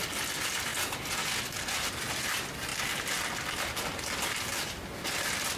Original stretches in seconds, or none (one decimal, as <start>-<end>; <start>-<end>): 0.0-5.6